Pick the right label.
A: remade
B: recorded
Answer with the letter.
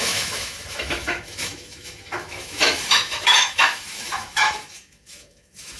A